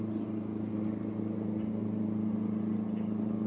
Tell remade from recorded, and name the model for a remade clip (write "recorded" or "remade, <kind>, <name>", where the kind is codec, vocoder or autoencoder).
recorded